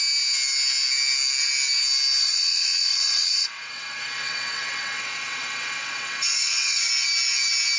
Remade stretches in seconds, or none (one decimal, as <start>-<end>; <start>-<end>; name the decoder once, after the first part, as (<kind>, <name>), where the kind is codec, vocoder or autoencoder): 2.2-6.9 (vocoder, WaveNeXt)